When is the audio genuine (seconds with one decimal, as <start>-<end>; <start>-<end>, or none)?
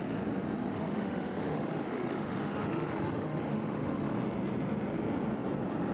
0.0-0.7; 4.2-5.9